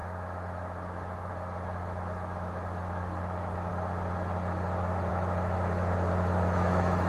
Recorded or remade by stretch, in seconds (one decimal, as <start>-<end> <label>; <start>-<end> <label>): 0.0-3.7 remade; 3.7-5.1 recorded; 5.1-7.1 remade

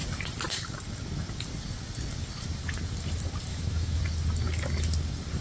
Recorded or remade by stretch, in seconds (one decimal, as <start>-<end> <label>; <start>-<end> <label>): 0.0-3.5 recorded; 3.5-4.0 remade; 4.0-5.4 recorded

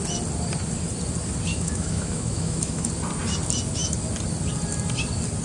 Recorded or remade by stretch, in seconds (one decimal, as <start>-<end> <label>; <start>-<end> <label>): 0.0-1.5 recorded; 1.5-2.9 remade; 2.9-5.4 recorded